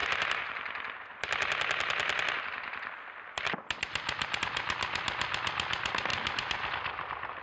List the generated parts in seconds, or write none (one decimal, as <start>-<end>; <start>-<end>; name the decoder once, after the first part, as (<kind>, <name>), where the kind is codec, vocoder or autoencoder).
none